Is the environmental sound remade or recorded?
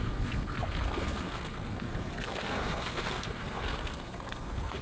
remade